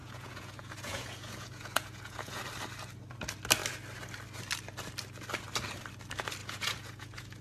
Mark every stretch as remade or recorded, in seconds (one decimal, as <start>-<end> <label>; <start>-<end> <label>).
0.0-2.4 remade; 2.4-6.4 recorded; 6.4-7.4 remade